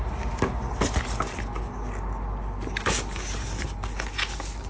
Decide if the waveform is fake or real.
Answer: real